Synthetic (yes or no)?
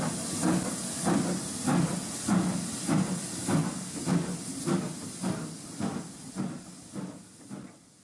no